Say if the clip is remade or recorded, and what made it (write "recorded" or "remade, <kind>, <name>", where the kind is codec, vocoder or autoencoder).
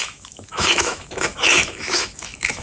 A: remade, autoencoder, DAC-VAE